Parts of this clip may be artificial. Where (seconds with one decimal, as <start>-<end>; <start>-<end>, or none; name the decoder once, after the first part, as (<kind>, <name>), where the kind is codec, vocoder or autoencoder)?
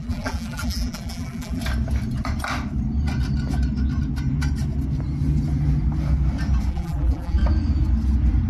0.0-1.6 (vocoder, BigVGAN v2); 6.7-7.4